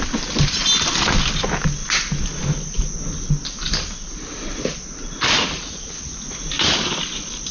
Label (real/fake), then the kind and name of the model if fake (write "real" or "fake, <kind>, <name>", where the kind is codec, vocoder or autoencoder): real